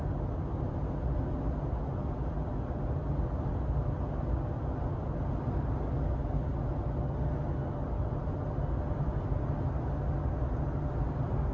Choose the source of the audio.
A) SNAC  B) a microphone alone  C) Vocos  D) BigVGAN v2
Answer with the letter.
B